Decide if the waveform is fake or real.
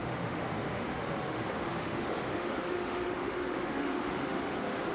fake